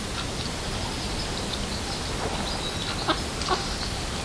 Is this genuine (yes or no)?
yes